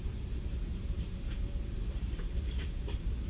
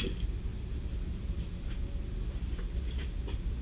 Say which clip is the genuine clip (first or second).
second